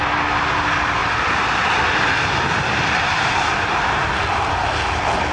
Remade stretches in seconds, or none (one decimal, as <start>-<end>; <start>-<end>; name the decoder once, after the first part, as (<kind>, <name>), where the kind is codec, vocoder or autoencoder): 1.0-4.2 (vocoder, BigVGAN v2)